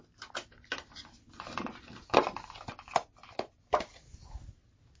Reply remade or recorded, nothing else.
recorded